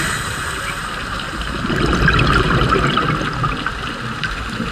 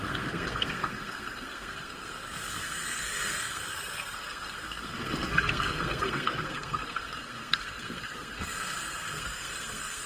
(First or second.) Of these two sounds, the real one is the first